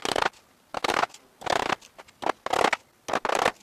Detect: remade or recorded recorded